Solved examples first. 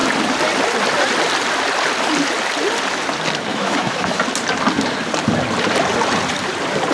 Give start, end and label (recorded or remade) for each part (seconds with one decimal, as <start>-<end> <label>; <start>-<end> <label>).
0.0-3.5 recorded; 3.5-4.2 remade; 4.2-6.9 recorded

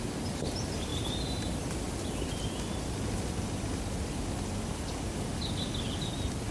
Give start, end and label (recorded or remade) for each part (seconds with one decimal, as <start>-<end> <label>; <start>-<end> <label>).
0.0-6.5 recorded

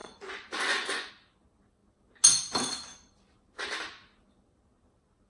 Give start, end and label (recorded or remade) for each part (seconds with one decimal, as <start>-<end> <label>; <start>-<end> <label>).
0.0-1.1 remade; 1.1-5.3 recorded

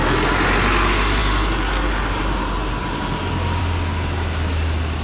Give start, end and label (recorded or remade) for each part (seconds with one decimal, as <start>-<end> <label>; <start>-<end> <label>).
0.0-5.0 recorded